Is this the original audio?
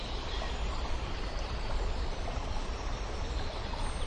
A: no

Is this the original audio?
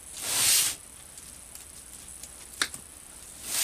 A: yes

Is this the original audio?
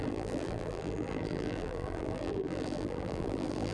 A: no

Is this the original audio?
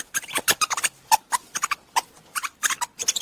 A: no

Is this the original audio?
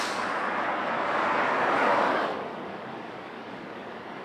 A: no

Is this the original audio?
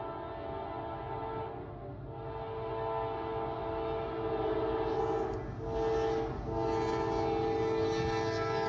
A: yes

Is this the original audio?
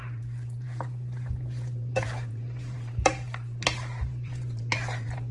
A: no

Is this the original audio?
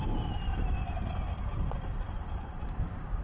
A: yes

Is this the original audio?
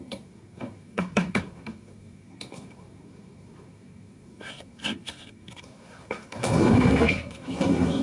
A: no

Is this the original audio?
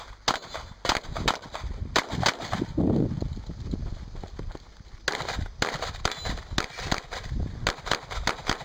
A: yes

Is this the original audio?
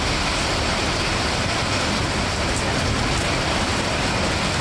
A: yes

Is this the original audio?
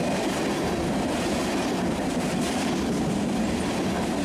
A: yes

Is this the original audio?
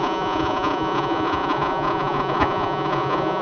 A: no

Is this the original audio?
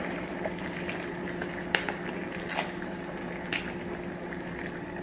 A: yes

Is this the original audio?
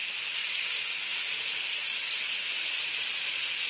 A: yes